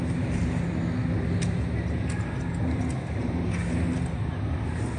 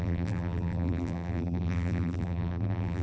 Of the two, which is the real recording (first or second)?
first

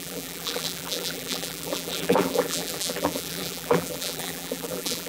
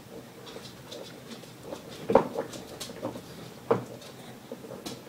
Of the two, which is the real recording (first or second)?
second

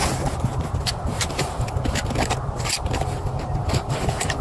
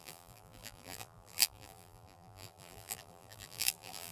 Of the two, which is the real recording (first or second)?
first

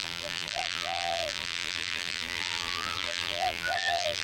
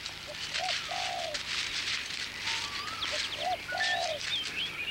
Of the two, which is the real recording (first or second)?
second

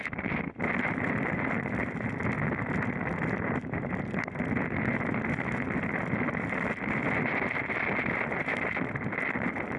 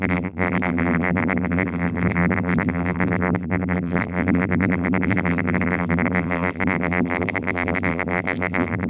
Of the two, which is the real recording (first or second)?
first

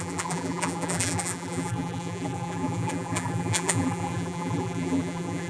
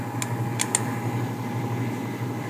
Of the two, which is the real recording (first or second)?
second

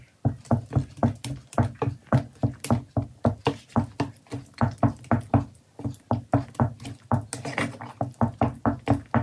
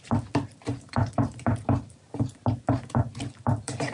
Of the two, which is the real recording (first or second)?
first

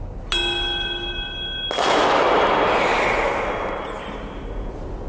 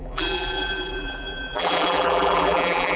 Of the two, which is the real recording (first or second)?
first